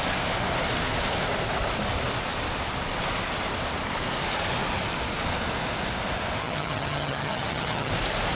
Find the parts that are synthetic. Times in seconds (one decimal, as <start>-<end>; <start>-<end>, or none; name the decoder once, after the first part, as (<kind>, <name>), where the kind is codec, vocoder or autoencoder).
6.4-7.9 (vocoder, HiFi-GAN)